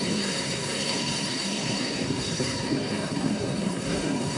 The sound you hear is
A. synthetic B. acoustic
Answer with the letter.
A